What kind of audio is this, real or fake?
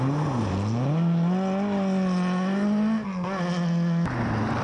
real